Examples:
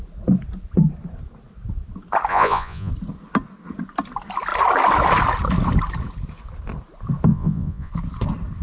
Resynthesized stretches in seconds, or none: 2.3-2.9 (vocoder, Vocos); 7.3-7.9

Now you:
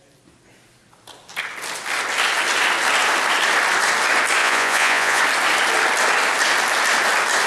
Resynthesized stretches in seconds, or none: 4.4-5.2 (vocoder, Vocos)

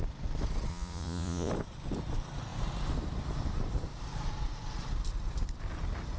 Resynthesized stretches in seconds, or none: 0.7-1.5 (vocoder, Vocos)

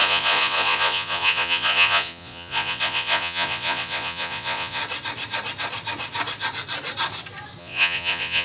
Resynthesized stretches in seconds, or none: 0.0-4.8 (vocoder, Vocos); 7.6-8.4

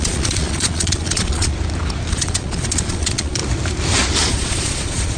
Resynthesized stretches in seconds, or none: 0.0-1.5 (vocoder, Vocos); 2.1-3.4; 4.3-5.2

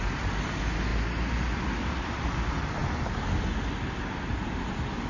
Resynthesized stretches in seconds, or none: none